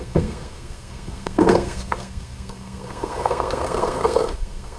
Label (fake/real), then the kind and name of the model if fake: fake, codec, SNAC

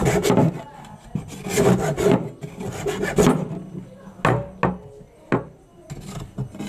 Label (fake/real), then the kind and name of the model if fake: real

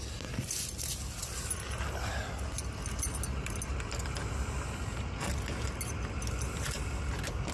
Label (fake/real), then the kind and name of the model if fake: real